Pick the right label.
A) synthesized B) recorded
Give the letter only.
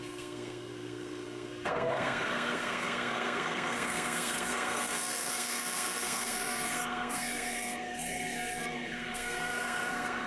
A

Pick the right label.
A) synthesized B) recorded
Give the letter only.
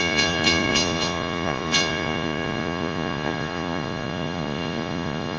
A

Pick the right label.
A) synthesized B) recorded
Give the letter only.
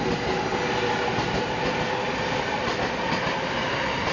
B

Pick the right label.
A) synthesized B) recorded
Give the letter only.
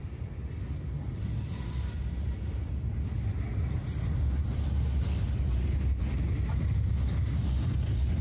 B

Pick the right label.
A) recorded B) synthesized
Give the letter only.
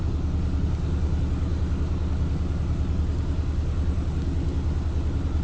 A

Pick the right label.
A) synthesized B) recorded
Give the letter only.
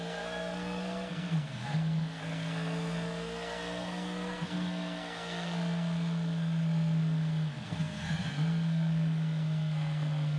A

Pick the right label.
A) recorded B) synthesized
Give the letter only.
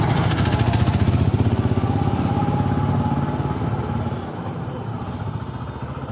A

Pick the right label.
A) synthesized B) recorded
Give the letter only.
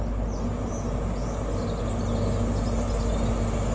B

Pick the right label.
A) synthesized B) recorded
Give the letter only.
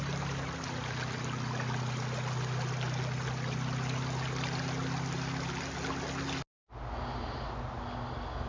B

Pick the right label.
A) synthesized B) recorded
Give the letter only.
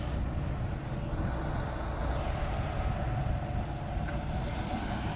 B